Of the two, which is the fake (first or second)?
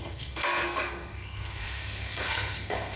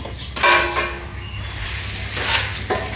first